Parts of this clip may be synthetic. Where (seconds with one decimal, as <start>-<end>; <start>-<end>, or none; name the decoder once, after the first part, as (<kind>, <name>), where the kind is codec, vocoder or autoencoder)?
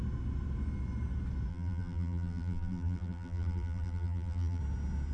1.5-4.6 (vocoder, BigVGAN v2)